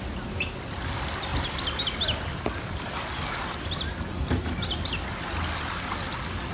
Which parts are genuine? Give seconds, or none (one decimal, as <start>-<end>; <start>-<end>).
0.0-6.5